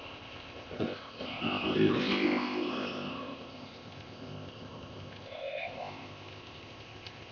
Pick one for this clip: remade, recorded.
remade